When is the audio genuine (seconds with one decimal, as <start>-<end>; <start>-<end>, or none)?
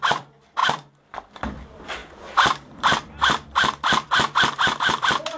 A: 0.6-1.1